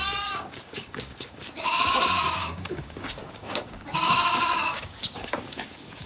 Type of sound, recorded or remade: remade